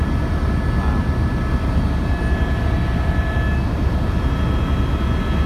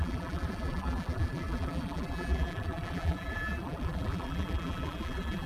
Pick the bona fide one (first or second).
first